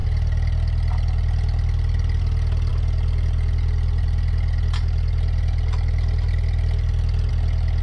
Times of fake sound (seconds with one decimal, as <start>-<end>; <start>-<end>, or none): 0.0-2.2; 2.7-7.3

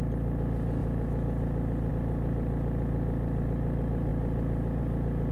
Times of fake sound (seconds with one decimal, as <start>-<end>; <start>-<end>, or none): none